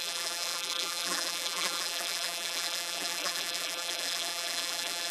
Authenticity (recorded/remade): remade